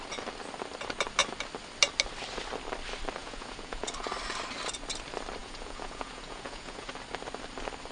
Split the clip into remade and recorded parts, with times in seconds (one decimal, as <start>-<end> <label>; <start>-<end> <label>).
0.0-3.2 recorded; 3.2-3.9 remade; 3.9-5.4 recorded; 5.4-6.9 remade; 6.9-7.9 recorded